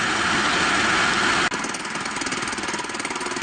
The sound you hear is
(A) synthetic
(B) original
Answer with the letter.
B